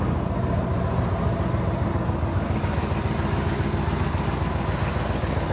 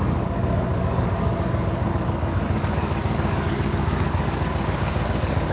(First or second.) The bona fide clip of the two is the first